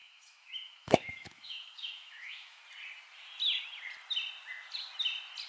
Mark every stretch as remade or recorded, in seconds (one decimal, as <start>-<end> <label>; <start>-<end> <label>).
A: 0.0-2.6 remade; 2.6-5.5 recorded